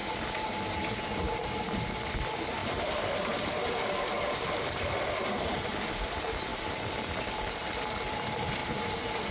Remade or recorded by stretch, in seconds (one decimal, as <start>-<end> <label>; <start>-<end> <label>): 0.0-2.6 recorded; 2.6-5.8 remade; 5.8-6.5 recorded; 6.5-7.1 remade; 7.1-9.3 recorded